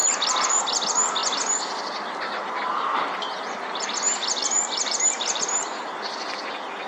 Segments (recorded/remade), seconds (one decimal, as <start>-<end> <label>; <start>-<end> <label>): 0.0-0.6 remade; 0.6-4.4 recorded; 4.4-5.4 remade; 5.4-6.9 recorded